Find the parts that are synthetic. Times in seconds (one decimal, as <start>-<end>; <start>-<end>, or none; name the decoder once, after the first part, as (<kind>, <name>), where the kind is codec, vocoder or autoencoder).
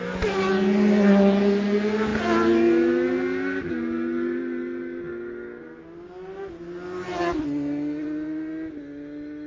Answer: none